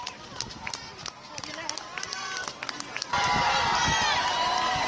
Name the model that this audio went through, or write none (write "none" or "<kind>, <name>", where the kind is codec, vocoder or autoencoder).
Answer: none